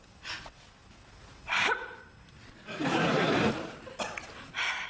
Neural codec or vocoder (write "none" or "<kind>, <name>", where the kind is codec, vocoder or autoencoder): none